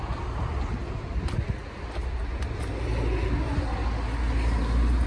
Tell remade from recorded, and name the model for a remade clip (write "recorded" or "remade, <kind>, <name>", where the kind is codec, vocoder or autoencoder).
recorded